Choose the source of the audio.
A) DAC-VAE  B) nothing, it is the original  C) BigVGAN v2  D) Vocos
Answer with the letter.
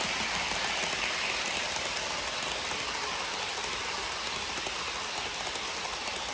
B